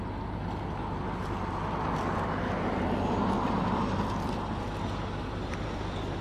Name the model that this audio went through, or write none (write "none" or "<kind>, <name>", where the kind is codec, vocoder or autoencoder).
none